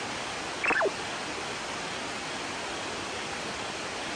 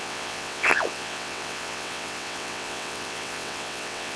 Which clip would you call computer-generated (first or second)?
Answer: second